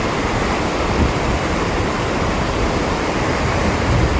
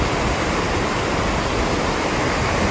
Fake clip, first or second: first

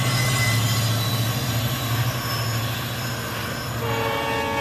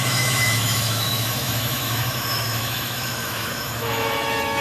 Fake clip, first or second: second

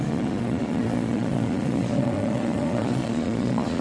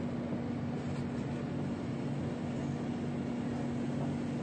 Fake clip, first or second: first